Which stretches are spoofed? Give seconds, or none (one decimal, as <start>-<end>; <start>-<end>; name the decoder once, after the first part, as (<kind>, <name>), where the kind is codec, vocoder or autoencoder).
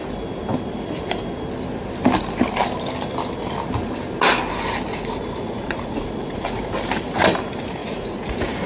4.9-6.7 (vocoder, Vocos); 7.8-8.7